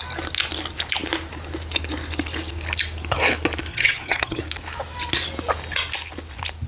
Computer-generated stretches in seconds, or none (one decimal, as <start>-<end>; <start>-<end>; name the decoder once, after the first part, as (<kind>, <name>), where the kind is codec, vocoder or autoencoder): 3.7-4.4 (vocoder, HiFi-GAN)